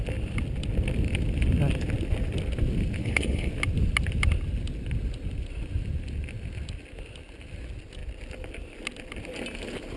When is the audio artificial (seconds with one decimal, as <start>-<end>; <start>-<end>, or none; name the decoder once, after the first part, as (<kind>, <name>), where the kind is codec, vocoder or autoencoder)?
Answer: 3.0-3.5 (codec, HILCodec)